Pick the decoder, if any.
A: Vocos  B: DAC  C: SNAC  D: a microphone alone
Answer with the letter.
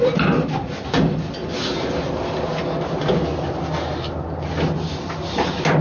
D